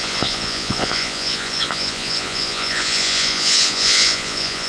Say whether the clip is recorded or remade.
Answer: remade